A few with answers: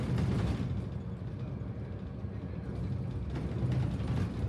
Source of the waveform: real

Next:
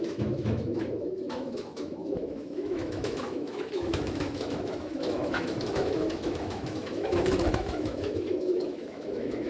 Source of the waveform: fake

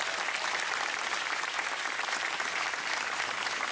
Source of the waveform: real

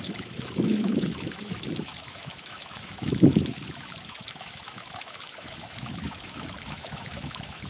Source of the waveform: fake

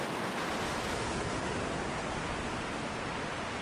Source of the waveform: real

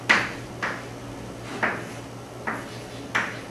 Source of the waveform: real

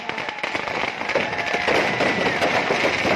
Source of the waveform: real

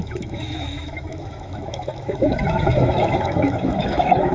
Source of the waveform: fake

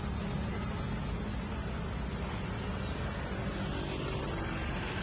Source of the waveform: real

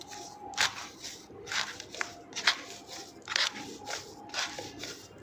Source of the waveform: real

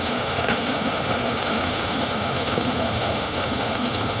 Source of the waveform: fake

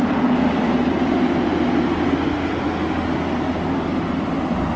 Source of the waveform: real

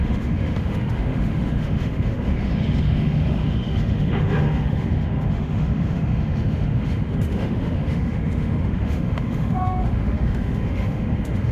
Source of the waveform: fake